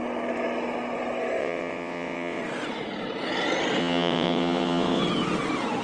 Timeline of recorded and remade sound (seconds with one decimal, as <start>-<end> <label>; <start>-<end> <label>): 0.0-1.4 recorded; 1.4-2.4 remade; 2.4-3.8 recorded; 3.8-5.0 remade; 5.0-5.8 recorded